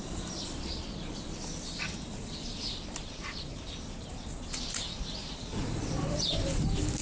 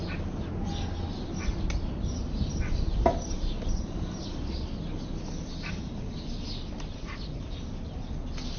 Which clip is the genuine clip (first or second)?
second